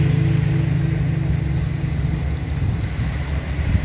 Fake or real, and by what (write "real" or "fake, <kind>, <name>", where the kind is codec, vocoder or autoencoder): real